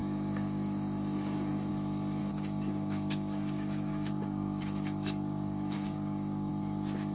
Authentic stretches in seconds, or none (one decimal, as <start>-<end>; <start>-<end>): 1.7-2.2; 6.5-7.1